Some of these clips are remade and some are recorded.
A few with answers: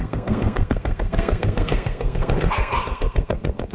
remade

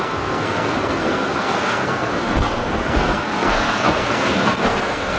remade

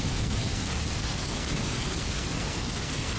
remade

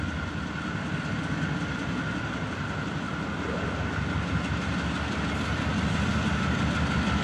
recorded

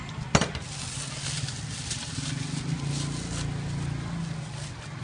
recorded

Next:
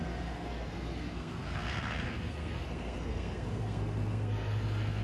remade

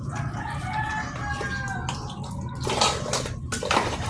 recorded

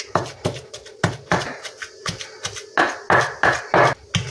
recorded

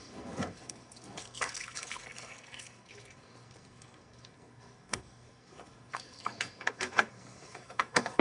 remade